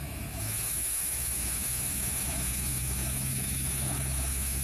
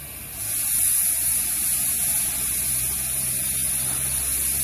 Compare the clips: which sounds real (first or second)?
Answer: second